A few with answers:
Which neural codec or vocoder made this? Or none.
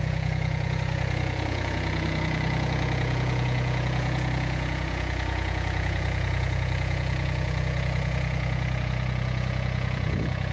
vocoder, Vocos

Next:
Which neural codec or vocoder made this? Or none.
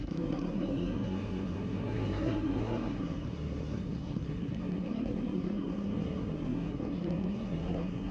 codec, SNAC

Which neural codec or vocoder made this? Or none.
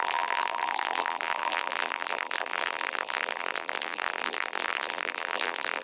vocoder, BigVGAN v2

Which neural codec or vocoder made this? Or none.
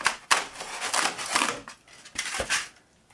none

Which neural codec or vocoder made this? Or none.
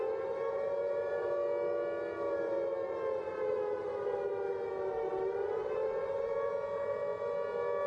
none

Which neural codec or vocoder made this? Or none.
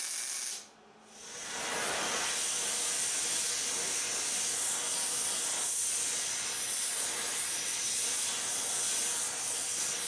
none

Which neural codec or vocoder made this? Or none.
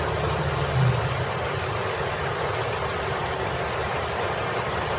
none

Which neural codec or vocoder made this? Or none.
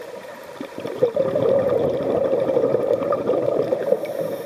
vocoder, BigVGAN v2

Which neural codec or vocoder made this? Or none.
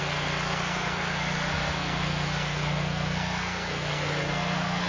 codec, SNAC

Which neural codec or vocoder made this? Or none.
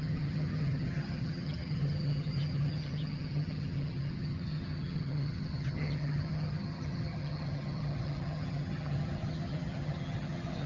vocoder, HiFi-GAN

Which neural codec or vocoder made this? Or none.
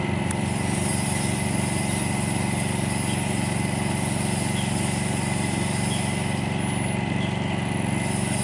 none